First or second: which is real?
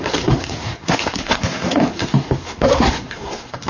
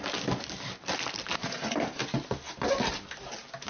second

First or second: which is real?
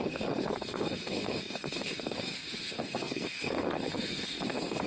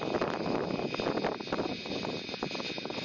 second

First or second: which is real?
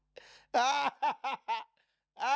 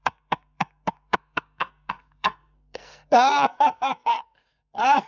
first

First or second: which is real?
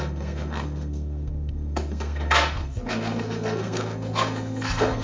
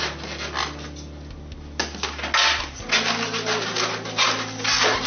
second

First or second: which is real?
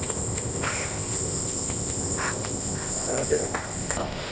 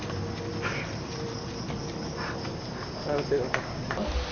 second